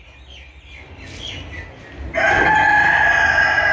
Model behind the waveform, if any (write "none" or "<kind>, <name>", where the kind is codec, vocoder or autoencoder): none